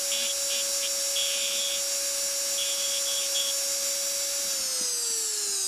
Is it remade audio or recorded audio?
recorded